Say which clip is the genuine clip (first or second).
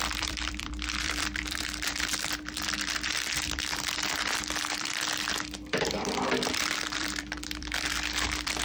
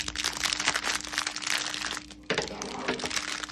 second